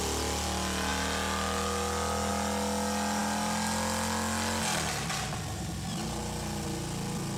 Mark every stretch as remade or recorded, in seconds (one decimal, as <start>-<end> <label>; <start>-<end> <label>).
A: 0.0-7.4 recorded

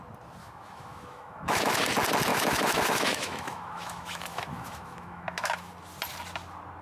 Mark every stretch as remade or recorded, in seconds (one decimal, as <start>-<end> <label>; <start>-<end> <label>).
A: 0.0-0.4 recorded; 0.4-1.8 remade; 1.8-2.3 recorded; 2.3-5.7 remade; 5.7-6.8 recorded

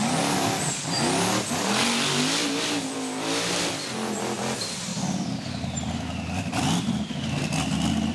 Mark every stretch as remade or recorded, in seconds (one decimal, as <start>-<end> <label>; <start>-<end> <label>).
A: 0.0-8.1 recorded